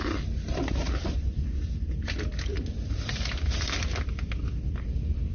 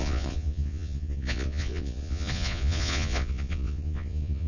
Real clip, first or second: first